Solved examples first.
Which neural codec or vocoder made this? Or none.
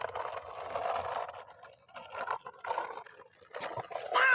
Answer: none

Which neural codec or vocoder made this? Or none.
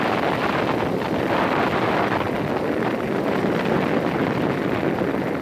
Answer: none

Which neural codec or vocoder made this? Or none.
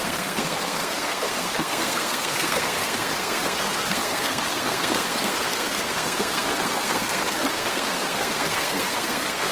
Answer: codec, SNAC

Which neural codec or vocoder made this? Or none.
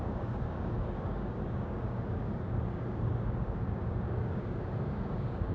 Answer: codec, DAC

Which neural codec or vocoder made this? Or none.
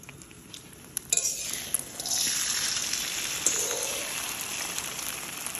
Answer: none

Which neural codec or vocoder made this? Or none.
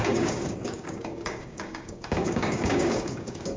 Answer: codec, DAC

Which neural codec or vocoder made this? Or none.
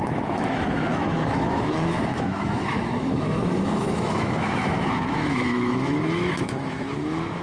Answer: autoencoder, DAC-VAE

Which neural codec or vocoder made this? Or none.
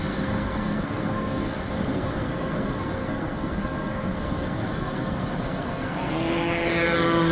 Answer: codec, SNAC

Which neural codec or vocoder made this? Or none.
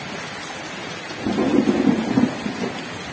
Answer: none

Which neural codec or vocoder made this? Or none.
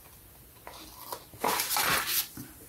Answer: none